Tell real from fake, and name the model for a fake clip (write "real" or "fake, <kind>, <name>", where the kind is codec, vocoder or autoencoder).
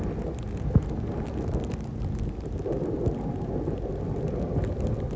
real